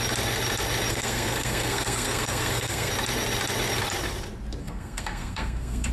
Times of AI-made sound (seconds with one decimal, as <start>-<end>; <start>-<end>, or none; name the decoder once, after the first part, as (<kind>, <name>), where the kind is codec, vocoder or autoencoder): 0.9-2.9 (codec, SNAC); 4.6-5.9